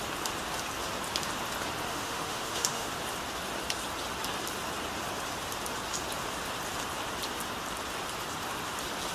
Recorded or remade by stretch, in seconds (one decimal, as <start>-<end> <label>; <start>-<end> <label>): 0.0-1.9 recorded; 1.9-2.9 remade; 2.9-9.1 recorded